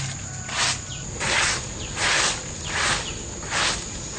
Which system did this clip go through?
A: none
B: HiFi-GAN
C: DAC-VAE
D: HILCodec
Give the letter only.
A